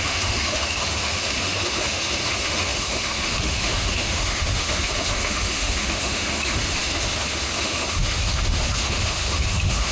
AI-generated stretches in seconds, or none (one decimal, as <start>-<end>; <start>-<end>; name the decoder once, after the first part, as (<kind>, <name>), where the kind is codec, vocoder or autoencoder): 0.0-9.9 (autoencoder, DAC-VAE)